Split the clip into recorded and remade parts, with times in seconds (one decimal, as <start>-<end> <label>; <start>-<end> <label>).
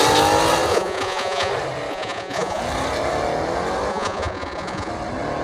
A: 0.0-0.7 recorded; 0.7-1.5 remade; 1.5-1.9 recorded; 1.9-2.6 remade; 2.6-3.9 recorded; 3.9-4.9 remade; 4.9-5.4 recorded